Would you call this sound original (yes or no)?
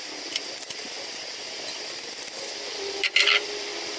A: no